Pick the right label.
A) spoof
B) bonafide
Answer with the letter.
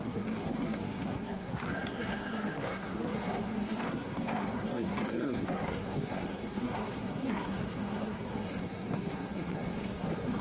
A